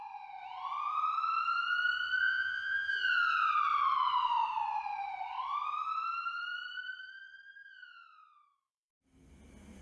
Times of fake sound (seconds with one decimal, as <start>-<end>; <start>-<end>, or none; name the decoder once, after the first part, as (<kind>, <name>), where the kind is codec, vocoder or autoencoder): 2.2-3.0 (vocoder, Vocos)